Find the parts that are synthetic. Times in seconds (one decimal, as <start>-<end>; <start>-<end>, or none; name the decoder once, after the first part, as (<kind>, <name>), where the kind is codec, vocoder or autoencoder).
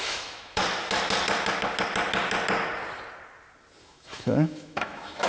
0.0-0.6 (autoencoder, DAC-VAE); 3.8-5.3